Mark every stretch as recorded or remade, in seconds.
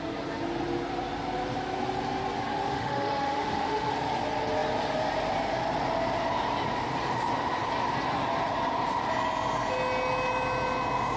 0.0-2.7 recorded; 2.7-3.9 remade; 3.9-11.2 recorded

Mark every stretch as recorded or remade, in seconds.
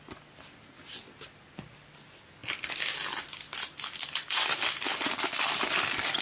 0.0-6.2 recorded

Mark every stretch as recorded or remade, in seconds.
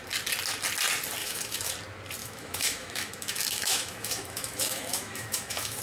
0.0-1.2 recorded; 1.2-1.7 remade; 1.7-2.2 recorded; 2.2-5.8 remade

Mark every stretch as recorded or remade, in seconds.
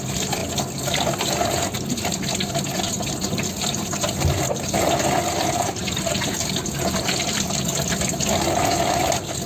0.0-9.5 recorded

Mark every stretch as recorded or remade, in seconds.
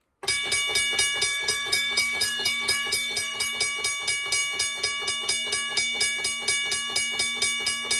0.0-1.3 recorded; 1.3-3.5 remade; 3.5-8.0 recorded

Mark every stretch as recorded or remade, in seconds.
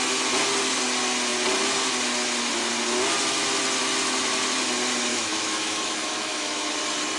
0.0-5.1 recorded; 5.1-6.7 remade; 6.7-7.2 recorded